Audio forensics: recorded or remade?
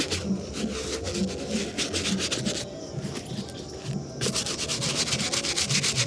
recorded